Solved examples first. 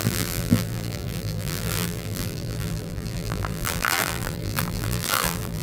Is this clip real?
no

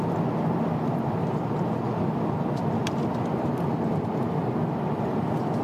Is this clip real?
yes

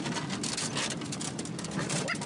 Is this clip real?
no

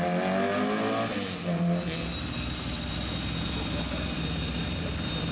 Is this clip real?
yes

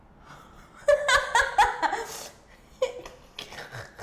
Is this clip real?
yes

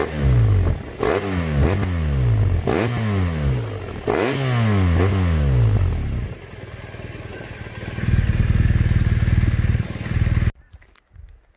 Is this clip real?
yes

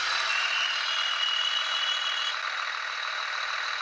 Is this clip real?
yes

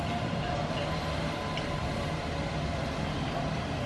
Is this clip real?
yes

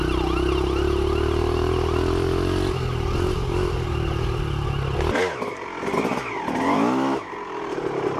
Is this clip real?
yes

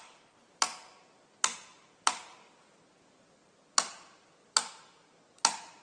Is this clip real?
no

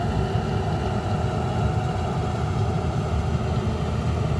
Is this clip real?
yes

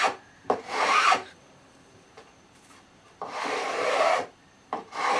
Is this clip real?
no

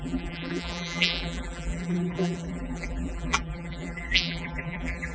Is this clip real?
no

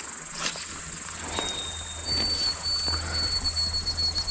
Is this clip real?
yes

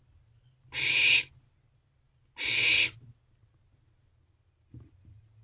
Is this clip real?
yes